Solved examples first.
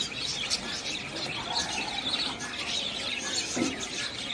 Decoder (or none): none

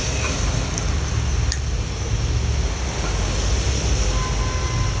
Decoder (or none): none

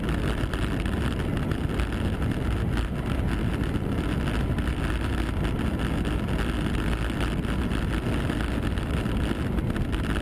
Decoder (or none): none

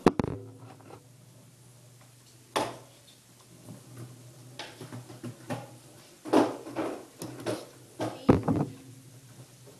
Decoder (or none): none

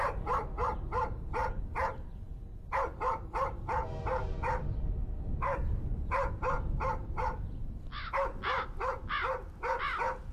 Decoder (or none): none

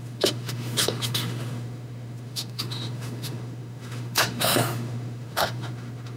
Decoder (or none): autoencoder, DAC-VAE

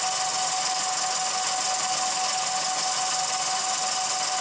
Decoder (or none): none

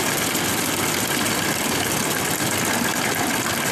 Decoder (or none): none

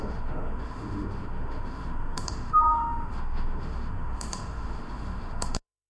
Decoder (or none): autoencoder, DAC-VAE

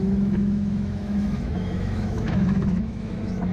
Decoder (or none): autoencoder, DAC-VAE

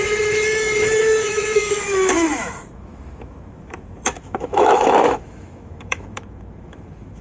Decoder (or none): autoencoder, DAC-VAE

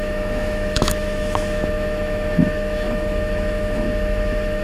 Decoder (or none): autoencoder, DAC-VAE